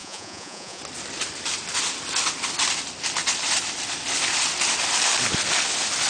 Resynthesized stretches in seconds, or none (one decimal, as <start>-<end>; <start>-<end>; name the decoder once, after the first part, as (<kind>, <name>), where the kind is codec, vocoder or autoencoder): 0.0-0.8 (vocoder, Vocos)